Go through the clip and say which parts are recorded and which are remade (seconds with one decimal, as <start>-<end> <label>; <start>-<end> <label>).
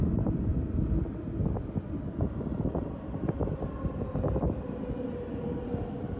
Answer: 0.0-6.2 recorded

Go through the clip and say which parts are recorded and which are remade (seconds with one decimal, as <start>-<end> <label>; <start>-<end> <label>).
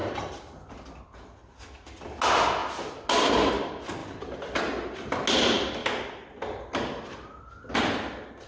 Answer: 0.0-1.0 remade; 1.0-4.0 recorded; 4.0-4.5 remade; 4.5-8.5 recorded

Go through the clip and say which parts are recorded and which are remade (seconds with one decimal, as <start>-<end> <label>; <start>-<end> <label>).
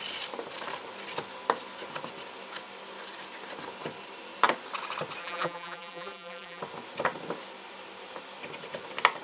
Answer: 0.0-5.2 recorded; 5.2-6.6 remade; 6.6-9.2 recorded